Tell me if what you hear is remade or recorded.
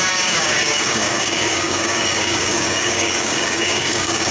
remade